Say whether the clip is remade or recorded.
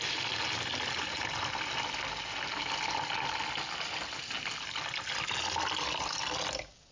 recorded